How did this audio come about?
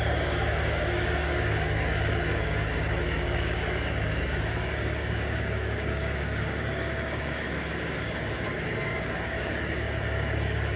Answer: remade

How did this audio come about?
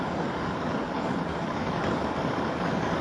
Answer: remade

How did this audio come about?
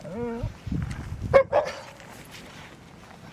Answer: recorded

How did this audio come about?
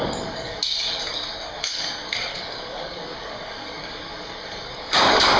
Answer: remade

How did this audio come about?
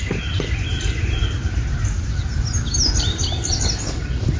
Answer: recorded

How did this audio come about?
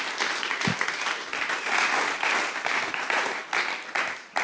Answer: recorded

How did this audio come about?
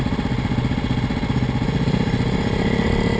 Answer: recorded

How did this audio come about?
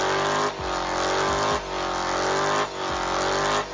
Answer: recorded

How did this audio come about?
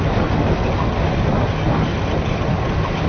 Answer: recorded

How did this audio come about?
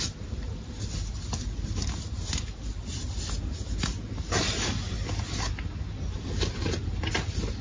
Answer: recorded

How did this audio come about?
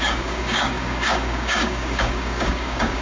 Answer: remade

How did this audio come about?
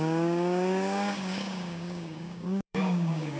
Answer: remade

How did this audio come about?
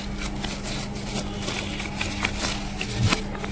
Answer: recorded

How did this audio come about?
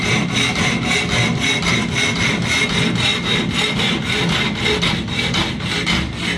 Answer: recorded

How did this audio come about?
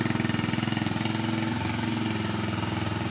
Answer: recorded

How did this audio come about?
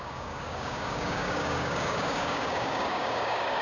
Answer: remade